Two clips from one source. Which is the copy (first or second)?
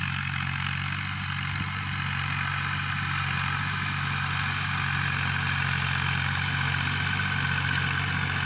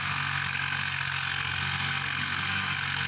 second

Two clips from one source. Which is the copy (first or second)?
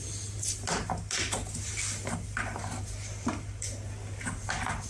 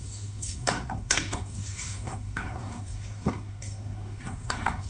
second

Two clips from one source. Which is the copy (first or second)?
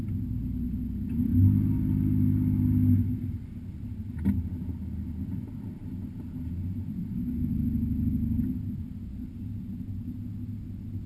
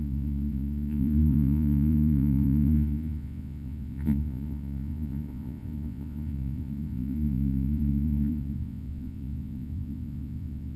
second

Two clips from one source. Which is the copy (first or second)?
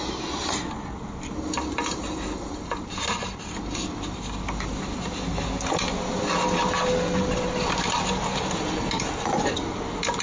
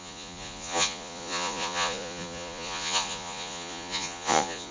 second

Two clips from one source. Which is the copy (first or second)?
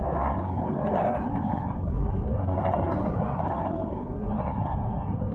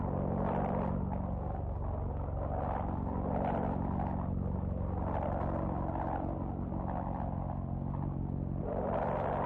first